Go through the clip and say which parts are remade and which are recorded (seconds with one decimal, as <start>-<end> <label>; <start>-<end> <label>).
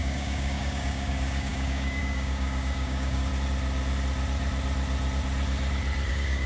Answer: 0.0-3.3 remade; 3.3-6.1 recorded; 6.1-6.5 remade